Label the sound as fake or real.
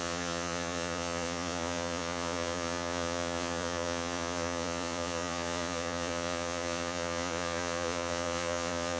fake